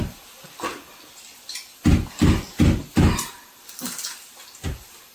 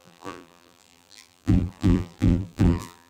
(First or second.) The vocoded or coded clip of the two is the second